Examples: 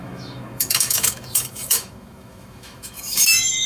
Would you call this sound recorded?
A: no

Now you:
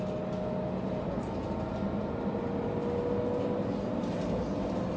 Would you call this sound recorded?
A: yes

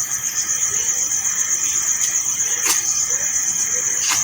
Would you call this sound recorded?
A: yes